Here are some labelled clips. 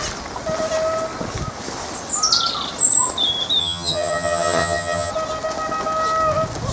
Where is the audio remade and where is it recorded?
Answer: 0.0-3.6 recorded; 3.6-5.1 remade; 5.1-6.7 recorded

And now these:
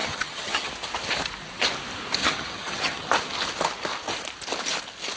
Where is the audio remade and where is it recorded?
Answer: 0.0-0.7 remade; 0.7-2.2 recorded; 2.2-3.1 remade; 3.1-5.2 recorded

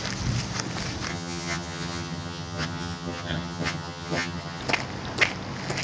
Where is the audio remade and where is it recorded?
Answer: 0.0-1.1 recorded; 1.1-4.6 remade; 4.6-5.8 recorded

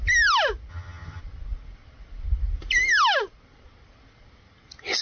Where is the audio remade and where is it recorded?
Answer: 0.0-0.7 recorded; 0.7-1.2 remade; 1.2-5.0 recorded